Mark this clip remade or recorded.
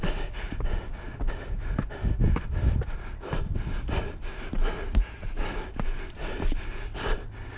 recorded